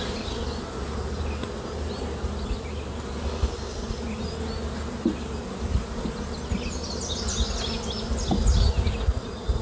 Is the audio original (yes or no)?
yes